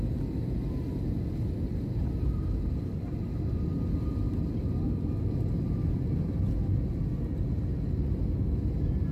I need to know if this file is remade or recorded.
recorded